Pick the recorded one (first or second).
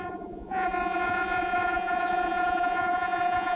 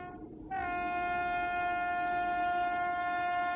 second